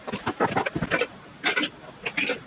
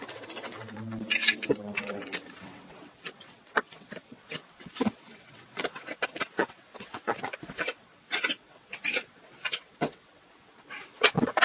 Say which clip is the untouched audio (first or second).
first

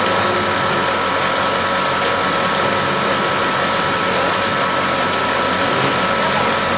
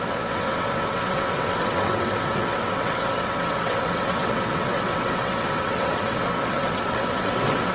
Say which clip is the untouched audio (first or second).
first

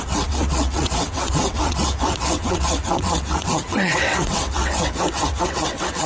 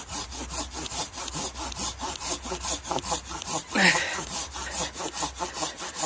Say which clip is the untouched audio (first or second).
second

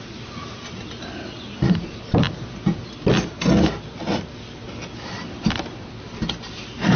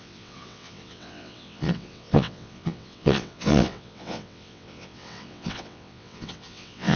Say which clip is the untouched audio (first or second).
first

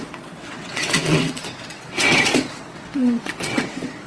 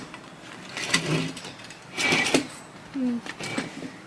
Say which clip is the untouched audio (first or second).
second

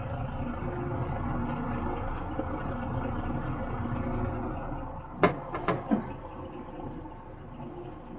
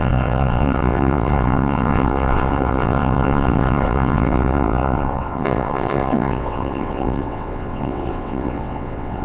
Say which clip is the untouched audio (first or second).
first